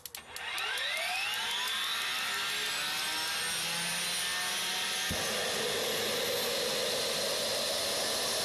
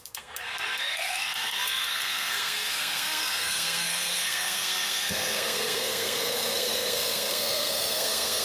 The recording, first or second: first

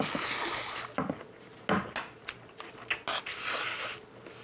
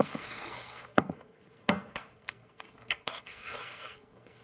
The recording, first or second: first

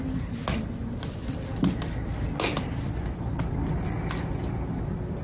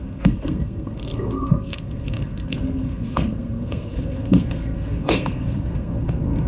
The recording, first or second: first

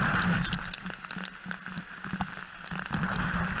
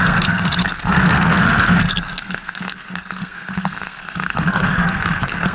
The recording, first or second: first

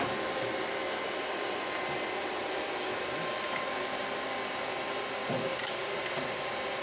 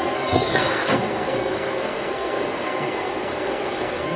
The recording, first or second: first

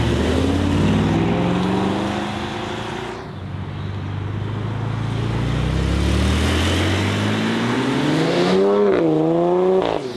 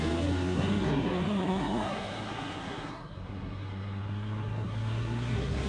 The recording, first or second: first